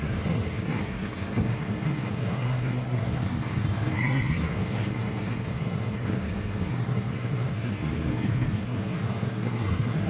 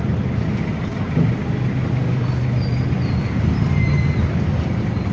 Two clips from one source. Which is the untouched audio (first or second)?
second